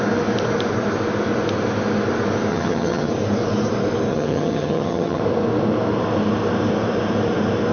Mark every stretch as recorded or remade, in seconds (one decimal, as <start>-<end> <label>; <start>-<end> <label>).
0.0-2.5 recorded; 2.5-3.1 remade; 3.1-4.1 recorded; 4.1-5.2 remade; 5.2-7.7 recorded